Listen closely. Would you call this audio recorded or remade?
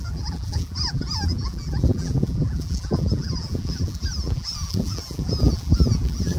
remade